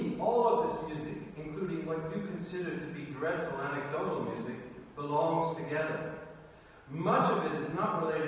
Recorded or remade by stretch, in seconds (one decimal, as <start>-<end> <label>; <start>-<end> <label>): 0.0-8.3 recorded